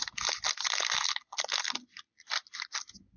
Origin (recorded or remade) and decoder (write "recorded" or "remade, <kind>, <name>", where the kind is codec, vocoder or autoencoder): recorded